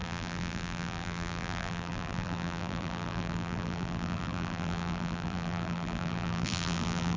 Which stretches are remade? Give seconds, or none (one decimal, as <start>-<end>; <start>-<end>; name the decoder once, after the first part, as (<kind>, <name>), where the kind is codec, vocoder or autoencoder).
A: 0.0-7.2 (vocoder, BigVGAN v2)